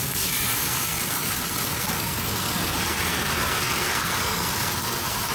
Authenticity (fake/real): fake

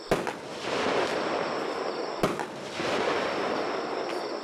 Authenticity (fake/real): real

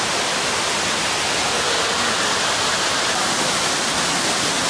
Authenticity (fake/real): real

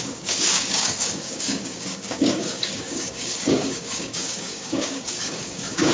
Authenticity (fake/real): fake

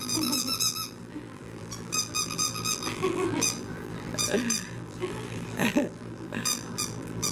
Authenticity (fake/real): fake